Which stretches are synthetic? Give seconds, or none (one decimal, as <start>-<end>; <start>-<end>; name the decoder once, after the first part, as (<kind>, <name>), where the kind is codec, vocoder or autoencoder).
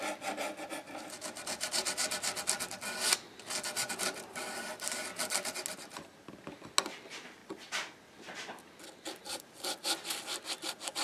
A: none